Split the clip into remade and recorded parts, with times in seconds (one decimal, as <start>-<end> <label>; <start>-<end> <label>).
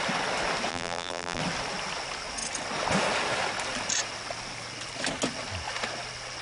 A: 0.0-0.7 recorded; 0.7-1.4 remade; 1.4-6.4 recorded